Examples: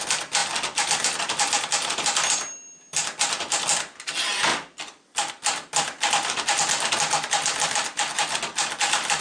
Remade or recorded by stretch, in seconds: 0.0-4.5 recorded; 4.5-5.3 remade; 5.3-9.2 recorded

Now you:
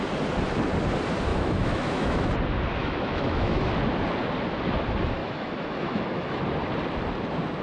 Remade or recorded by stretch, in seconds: 0.0-1.3 recorded; 1.3-2.3 remade; 2.3-2.8 recorded; 2.8-3.7 remade; 3.7-5.2 recorded; 5.2-6.4 remade; 6.4-7.6 recorded